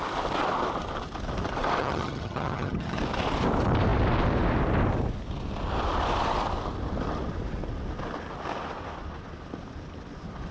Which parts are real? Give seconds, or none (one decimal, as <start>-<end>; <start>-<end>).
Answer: 0.0-1.8; 3.0-10.5